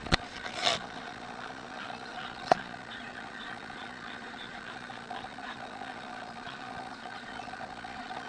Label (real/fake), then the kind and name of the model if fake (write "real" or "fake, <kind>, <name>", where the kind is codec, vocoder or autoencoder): fake, vocoder, Vocos